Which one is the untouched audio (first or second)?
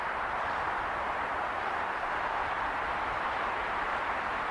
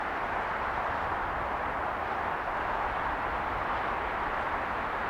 second